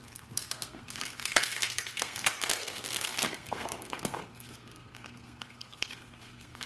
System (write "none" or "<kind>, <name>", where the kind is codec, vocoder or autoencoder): codec, SNAC